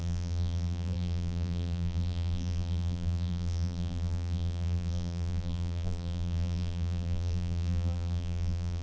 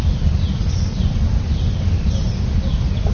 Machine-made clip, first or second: first